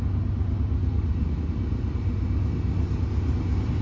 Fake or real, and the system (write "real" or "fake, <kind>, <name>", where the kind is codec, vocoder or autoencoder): real